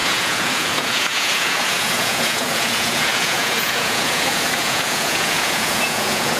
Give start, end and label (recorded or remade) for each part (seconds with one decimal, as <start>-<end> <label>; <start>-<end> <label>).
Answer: 0.0-6.4 remade